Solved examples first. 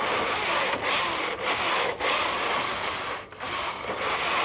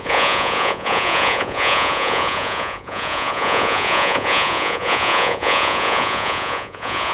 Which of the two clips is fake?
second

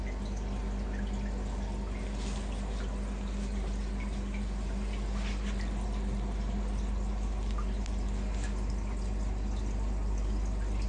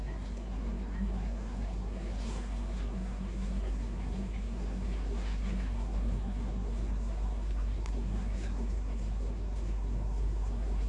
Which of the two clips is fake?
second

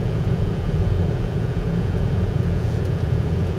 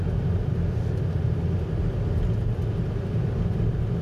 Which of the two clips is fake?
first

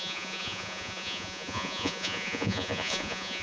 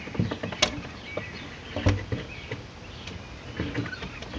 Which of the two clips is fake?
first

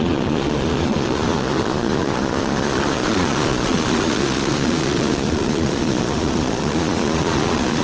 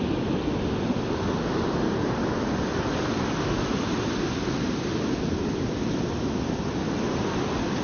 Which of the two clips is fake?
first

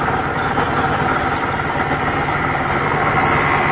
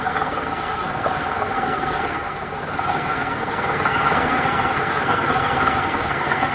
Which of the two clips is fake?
second